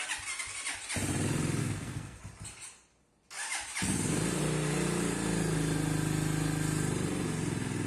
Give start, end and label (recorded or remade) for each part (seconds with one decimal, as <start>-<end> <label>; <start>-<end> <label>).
0.0-1.6 recorded; 1.6-2.2 remade; 2.2-7.9 recorded